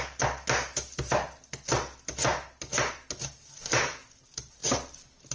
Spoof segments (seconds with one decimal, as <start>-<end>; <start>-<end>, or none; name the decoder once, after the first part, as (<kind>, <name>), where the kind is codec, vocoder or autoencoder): none